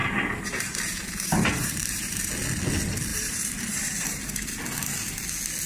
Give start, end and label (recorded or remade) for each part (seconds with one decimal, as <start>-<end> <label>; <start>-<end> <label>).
0.0-2.3 remade; 2.3-3.1 recorded; 3.1-4.5 remade; 4.5-5.7 recorded